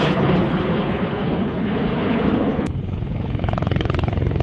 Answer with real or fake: fake